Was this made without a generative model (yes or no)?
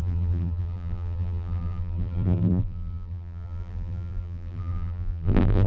no